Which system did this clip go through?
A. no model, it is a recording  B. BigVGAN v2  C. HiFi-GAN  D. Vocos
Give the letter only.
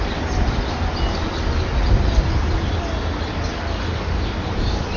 A